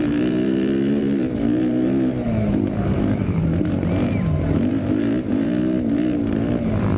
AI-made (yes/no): yes